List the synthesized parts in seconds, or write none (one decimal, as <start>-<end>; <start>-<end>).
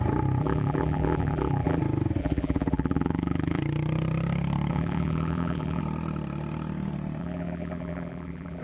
0.4-1.8; 2.2-3.6; 4.7-5.8; 7.2-8.6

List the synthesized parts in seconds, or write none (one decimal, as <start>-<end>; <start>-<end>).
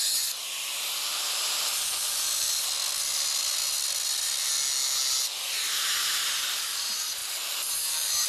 0.0-0.7; 1.3-2.8; 6.8-8.3